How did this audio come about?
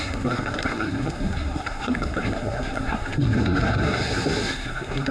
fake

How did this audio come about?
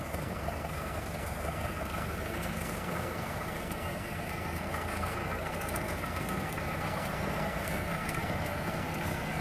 fake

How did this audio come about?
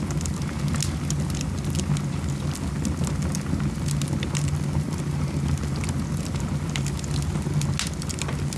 real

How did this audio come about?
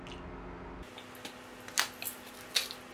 real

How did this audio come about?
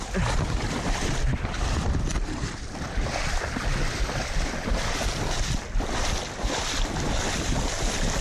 real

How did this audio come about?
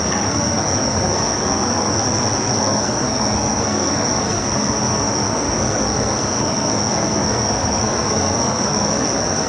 fake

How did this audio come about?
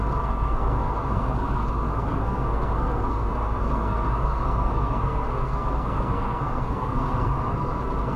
fake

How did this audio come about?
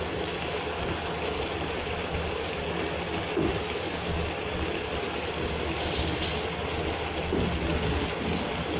real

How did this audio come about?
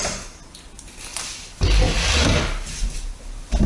real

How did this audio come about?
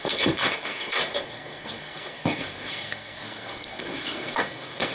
fake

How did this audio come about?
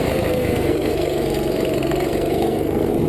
fake